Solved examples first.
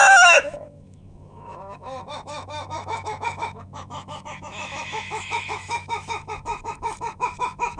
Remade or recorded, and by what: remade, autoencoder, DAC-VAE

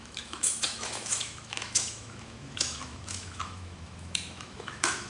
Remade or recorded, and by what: remade, autoencoder, DAC-VAE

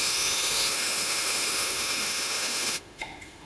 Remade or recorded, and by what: remade, autoencoder, DAC-VAE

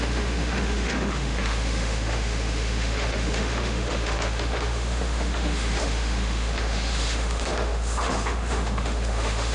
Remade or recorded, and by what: remade, autoencoder, DAC-VAE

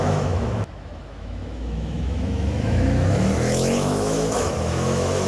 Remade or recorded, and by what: remade, autoencoder, DAC-VAE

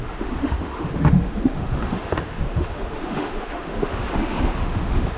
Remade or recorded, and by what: remade, autoencoder, DAC-VAE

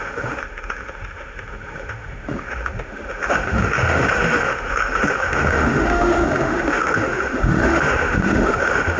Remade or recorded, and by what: remade, autoencoder, DAC-VAE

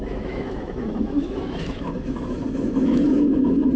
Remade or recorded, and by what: remade, autoencoder, DAC-VAE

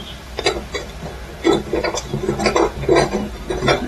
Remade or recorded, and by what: recorded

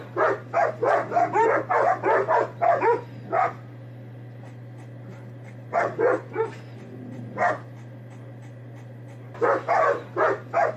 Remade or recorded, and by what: recorded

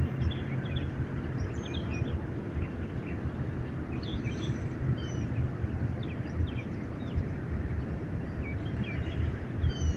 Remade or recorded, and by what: recorded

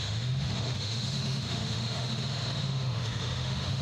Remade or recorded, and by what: remade, autoencoder, DAC-VAE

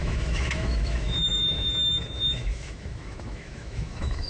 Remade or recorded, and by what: remade, autoencoder, DAC-VAE